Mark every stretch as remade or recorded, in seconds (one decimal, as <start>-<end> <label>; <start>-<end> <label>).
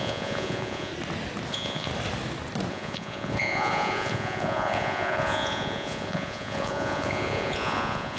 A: 0.0-0.9 remade; 0.9-1.5 recorded; 1.5-1.9 remade; 1.9-2.7 recorded; 2.7-8.2 remade